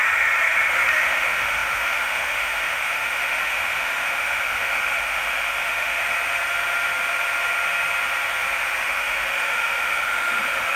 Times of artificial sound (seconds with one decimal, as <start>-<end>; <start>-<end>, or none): 0.7-6.0; 8.8-10.8